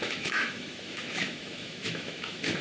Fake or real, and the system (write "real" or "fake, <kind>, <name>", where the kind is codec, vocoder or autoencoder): fake, autoencoder, DAC-VAE